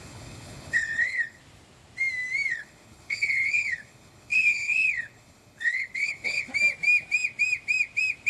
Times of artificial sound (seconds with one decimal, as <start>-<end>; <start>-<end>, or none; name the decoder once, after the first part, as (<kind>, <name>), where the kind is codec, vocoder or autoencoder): 0.0-1.4 (codec, HILCodec); 2.5-6.5